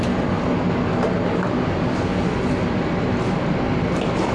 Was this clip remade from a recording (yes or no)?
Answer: no